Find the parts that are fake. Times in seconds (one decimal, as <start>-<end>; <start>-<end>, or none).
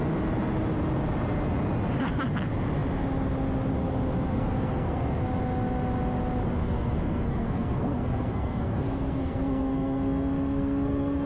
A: 4.3-5.2; 6.6-11.3